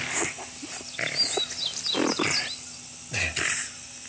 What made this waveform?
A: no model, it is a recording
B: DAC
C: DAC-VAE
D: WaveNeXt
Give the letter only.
A